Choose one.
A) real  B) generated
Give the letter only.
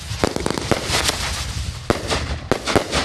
A